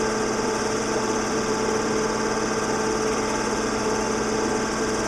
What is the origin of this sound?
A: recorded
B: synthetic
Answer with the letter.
A